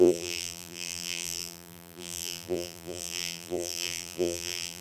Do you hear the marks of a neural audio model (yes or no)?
yes